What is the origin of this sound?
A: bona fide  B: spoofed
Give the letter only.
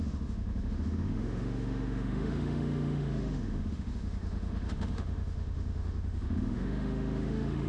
B